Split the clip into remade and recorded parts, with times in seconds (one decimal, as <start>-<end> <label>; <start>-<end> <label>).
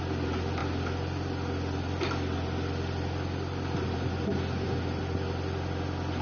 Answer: 0.0-6.2 recorded